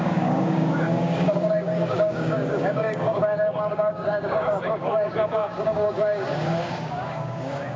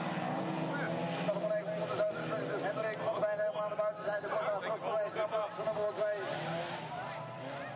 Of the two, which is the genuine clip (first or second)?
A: second